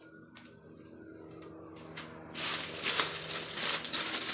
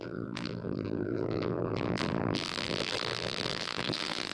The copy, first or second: second